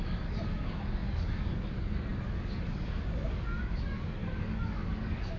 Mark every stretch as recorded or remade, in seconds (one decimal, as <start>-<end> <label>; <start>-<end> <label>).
0.0-5.4 remade